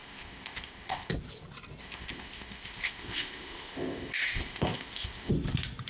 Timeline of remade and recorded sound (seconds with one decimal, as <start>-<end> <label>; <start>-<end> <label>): 0.0-1.1 remade; 1.1-1.8 recorded; 1.8-5.3 remade; 5.3-5.9 recorded